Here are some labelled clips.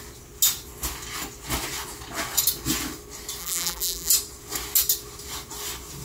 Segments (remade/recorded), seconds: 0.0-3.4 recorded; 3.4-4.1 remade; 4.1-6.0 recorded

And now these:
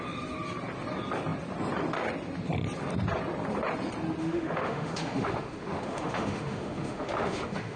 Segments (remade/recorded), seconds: 0.0-4.2 recorded; 4.2-7.8 remade

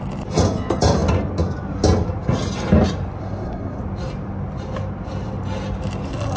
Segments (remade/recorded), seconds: 0.0-3.2 recorded; 3.2-3.8 remade; 3.8-6.4 recorded

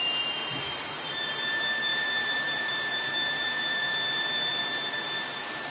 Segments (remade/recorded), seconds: 0.0-0.4 recorded; 0.4-1.1 remade; 1.1-1.9 recorded; 1.9-4.6 remade; 4.6-5.7 recorded

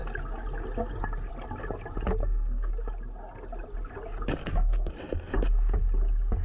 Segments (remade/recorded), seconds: 0.0-2.2 recorded; 2.2-2.7 remade; 2.7-4.4 recorded; 4.4-4.9 remade; 4.9-6.4 recorded

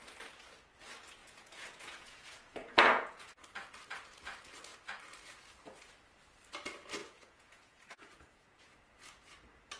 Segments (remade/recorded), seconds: 0.0-1.2 recorded; 1.2-3.4 remade; 3.4-7.0 recorded; 7.0-8.6 remade; 8.6-9.8 recorded

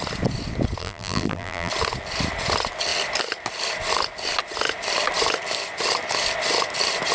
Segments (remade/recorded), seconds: 0.0-0.8 recorded; 0.8-1.7 remade; 1.7-7.1 recorded